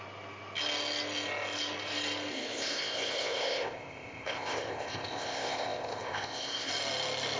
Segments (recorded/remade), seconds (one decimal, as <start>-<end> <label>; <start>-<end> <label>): 0.0-2.3 recorded; 2.3-6.7 remade; 6.7-7.4 recorded